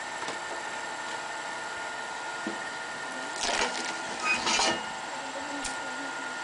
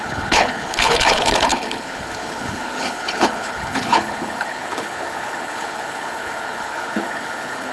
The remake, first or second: second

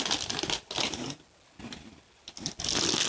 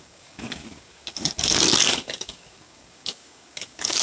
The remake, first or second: second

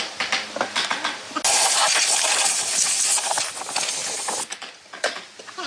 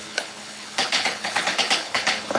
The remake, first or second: second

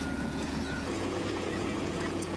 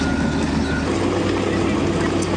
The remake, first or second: first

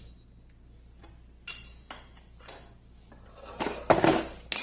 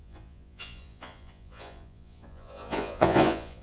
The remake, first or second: second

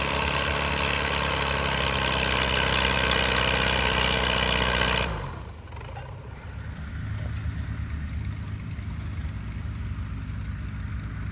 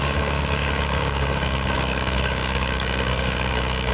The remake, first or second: second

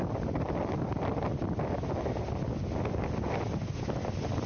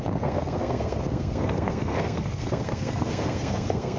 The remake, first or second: second